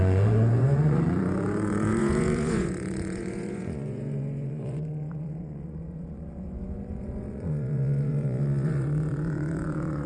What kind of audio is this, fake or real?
fake